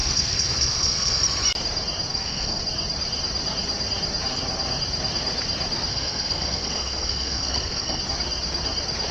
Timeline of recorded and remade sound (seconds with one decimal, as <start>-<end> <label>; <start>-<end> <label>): 0.0-1.2 remade; 1.2-2.1 recorded; 2.1-2.6 remade; 2.6-5.9 recorded; 5.9-8.0 remade; 8.0-9.1 recorded